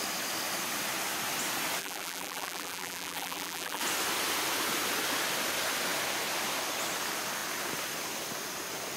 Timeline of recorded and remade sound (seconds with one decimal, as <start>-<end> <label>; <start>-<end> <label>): 0.0-1.8 recorded; 1.8-3.8 remade; 3.8-9.0 recorded